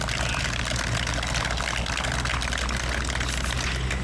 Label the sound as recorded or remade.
recorded